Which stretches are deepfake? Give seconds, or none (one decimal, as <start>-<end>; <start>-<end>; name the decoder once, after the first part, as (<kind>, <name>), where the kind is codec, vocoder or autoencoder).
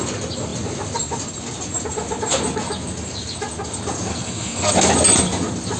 4.1-4.7 (codec, SNAC)